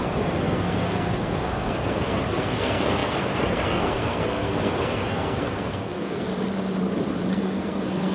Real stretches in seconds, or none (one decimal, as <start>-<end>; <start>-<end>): 6.3-7.3